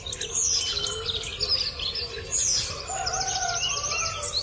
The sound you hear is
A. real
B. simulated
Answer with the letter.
A